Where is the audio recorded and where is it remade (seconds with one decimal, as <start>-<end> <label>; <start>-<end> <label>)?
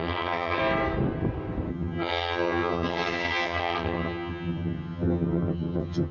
0.0-0.6 remade; 0.6-1.7 recorded; 1.7-6.1 remade